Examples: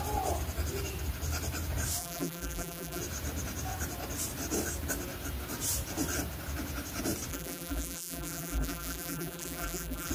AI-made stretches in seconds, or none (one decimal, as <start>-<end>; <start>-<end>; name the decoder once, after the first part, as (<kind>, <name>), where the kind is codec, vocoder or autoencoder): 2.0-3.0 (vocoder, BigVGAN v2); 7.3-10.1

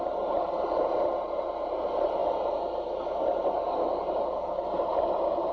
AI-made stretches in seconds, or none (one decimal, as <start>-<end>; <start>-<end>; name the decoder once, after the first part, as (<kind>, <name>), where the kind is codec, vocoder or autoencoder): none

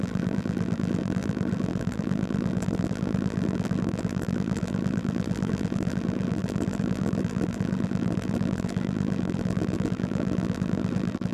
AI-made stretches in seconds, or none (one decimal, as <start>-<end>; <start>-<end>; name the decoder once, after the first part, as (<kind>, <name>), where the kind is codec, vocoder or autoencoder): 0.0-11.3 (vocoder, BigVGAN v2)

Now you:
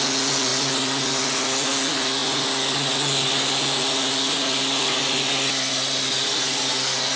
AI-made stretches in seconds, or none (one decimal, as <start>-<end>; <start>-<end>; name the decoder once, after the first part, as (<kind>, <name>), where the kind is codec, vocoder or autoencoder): 0.5-1.3 (vocoder, BigVGAN v2)